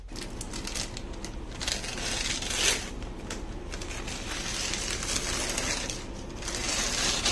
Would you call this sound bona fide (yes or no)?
yes